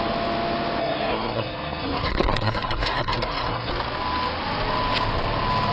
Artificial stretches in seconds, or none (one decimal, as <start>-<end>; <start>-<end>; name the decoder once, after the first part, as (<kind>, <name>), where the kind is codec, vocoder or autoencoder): 0.8-3.7 (codec, SNAC)